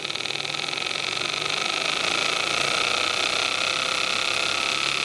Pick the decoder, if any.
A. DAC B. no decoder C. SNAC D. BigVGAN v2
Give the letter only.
B